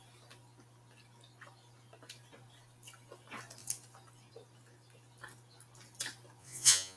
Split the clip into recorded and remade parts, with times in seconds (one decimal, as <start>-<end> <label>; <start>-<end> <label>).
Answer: 0.0-6.4 recorded; 6.4-7.0 remade